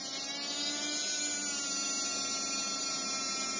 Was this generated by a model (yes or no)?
no